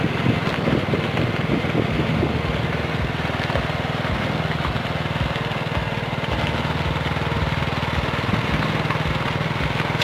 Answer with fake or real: real